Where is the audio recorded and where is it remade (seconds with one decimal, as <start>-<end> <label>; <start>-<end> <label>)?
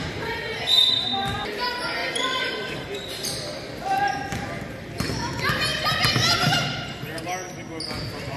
0.0-2.0 recorded; 2.0-5.0 remade; 5.0-8.4 recorded